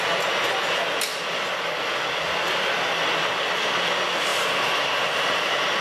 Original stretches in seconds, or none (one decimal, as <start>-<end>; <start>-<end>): 0.0-4.3